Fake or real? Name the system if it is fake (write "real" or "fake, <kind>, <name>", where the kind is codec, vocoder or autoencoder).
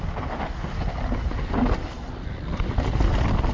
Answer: real